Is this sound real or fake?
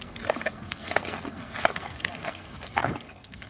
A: fake